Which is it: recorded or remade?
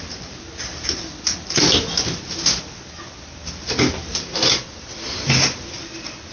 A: recorded